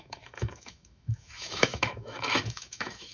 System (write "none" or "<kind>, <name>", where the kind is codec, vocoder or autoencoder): autoencoder, DAC-VAE